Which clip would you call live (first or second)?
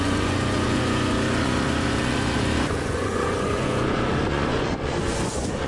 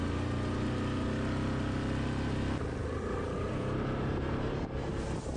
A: second